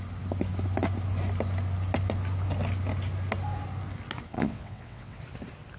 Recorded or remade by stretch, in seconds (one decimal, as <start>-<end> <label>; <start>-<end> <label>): 0.0-4.3 recorded; 4.3-5.2 remade; 5.2-5.8 recorded